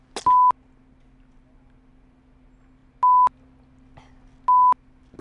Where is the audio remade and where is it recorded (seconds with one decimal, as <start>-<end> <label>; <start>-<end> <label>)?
0.0-5.2 recorded